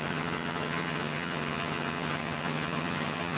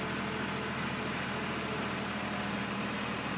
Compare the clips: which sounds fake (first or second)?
first